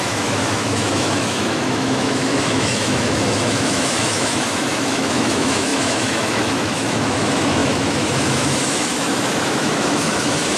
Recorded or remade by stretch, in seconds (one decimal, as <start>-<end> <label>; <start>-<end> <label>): 0.0-10.6 remade